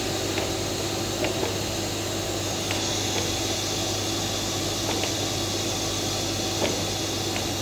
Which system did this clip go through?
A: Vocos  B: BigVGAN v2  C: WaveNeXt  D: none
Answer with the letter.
D